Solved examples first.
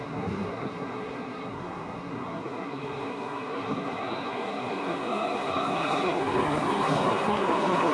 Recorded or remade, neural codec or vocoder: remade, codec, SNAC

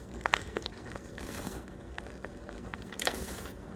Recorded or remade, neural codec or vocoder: remade, codec, SNAC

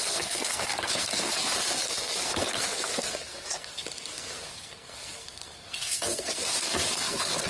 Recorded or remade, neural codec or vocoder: remade, codec, SNAC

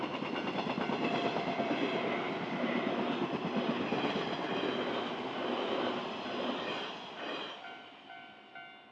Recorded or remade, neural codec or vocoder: recorded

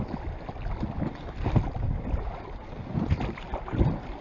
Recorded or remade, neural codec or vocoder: recorded